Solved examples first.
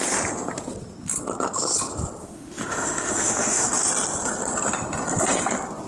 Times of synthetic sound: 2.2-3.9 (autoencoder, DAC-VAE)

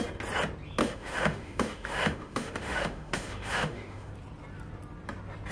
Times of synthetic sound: 0.8-4.1 (autoencoder, DAC-VAE)

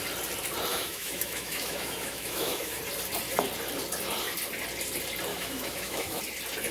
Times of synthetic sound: 0.7-2.8 (autoencoder, DAC-VAE); 5.3-6.2